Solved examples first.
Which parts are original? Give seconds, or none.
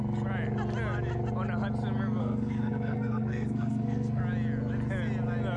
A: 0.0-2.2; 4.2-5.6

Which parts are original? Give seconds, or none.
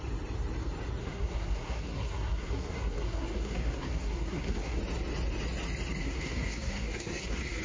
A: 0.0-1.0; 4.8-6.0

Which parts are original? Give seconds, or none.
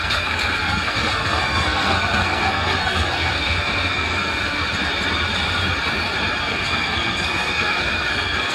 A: 4.6-6.4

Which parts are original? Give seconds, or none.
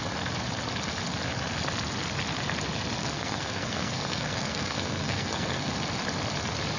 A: 0.0-3.0; 5.7-6.8